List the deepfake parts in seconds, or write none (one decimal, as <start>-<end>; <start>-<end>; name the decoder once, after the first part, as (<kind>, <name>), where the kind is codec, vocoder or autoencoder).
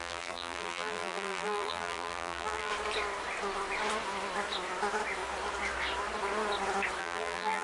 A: 0.0-2.7 (vocoder, BigVGAN v2); 7.0-7.6